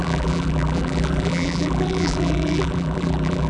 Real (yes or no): no